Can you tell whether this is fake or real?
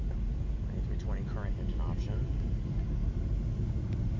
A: real